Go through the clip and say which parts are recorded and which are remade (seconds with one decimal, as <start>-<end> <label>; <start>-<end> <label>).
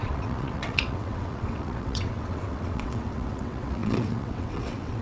0.0-5.0 remade